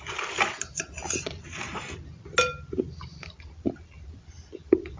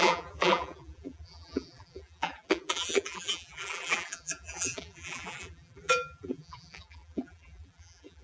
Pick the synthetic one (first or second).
second